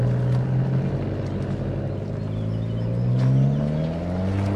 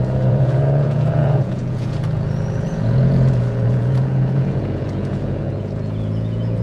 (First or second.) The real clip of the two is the first